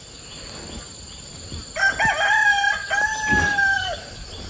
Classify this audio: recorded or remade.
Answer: recorded